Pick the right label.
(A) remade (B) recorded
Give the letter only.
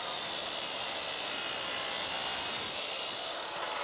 B